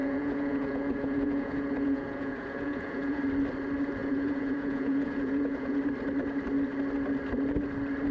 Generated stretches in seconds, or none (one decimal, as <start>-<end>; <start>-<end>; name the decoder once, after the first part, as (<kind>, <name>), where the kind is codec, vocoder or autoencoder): 0.0-3.2 (vocoder, Vocos); 4.0-5.8